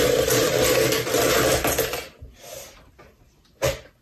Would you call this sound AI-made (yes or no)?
no